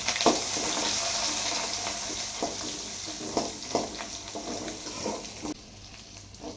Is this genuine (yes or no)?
yes